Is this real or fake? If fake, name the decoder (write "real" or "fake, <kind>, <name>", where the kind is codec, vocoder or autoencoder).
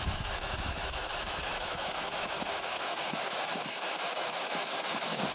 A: fake, autoencoder, DAC-VAE